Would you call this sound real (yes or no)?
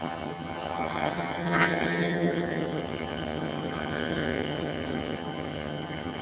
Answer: no